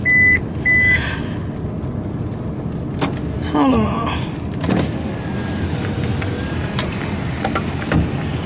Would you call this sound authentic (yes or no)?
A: yes